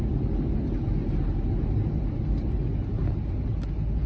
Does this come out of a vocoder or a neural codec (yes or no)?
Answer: no